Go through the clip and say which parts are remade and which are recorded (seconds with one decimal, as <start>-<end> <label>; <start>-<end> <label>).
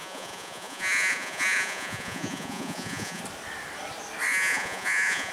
0.0-3.2 remade; 3.2-4.3 recorded; 4.3-5.3 remade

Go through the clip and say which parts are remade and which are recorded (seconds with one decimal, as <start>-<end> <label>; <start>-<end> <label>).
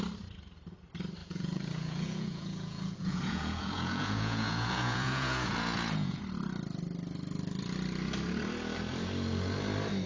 0.0-1.2 recorded; 1.2-6.2 remade; 6.2-10.1 recorded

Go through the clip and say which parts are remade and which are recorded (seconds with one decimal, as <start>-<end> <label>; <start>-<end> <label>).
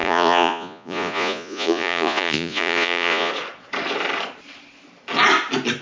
0.0-3.3 remade; 3.3-5.8 recorded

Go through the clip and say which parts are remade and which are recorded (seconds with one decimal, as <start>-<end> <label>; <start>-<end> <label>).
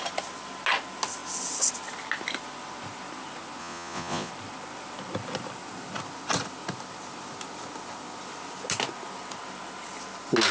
0.0-3.6 recorded; 3.6-4.3 remade; 4.3-10.5 recorded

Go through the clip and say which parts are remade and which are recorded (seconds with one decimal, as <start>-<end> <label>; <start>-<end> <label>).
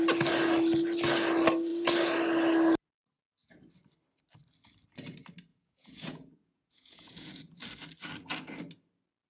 0.0-5.5 recorded; 5.5-7.4 remade; 7.4-9.3 recorded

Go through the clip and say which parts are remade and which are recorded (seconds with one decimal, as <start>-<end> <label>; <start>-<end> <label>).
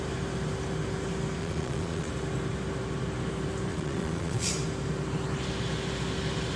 0.0-1.4 recorded; 1.4-2.1 remade; 2.1-3.7 recorded; 3.7-4.5 remade; 4.5-6.6 recorded